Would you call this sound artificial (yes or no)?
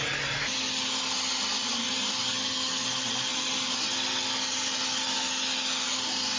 no